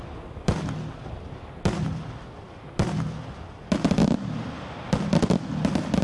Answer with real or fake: real